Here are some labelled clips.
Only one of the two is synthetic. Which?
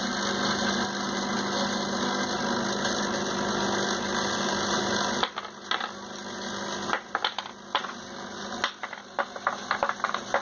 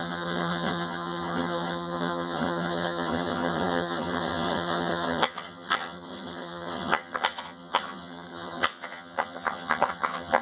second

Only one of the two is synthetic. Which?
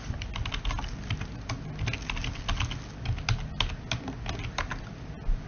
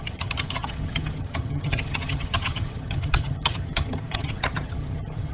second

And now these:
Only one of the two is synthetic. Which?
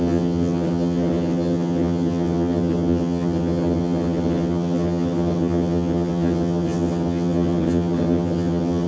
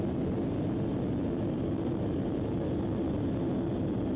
first